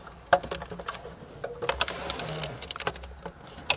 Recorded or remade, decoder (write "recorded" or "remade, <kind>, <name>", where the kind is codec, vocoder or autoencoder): recorded